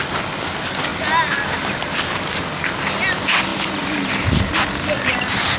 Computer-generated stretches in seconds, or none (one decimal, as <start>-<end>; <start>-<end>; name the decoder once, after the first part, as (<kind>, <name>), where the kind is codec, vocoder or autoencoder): none